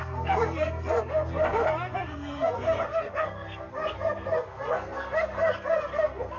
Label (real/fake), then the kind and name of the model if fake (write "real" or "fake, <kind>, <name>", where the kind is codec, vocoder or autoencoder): fake, codec, SNAC